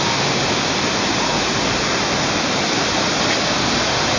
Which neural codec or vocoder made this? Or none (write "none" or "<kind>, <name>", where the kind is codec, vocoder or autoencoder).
none